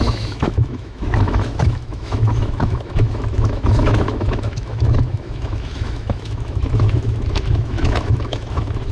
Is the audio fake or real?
fake